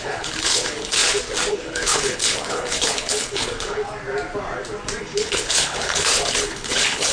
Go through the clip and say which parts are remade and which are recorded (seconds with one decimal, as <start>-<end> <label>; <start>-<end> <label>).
0.0-1.0 remade; 1.0-1.5 recorded; 1.5-3.8 remade; 3.8-5.0 recorded; 5.0-7.1 remade